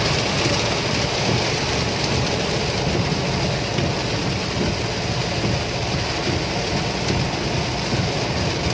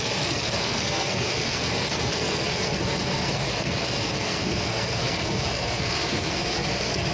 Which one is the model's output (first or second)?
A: second